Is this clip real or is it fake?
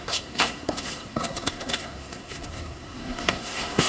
fake